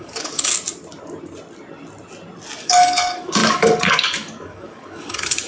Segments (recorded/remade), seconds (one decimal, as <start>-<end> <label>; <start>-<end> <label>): 0.0-0.5 remade; 0.5-2.6 recorded; 2.6-5.5 remade